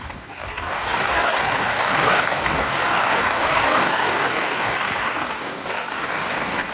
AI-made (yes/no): yes